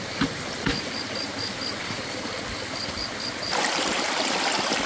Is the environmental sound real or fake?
real